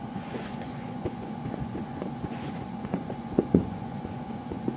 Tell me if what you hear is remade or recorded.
remade